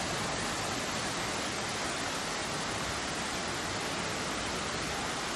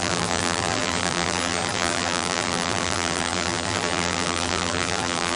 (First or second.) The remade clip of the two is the second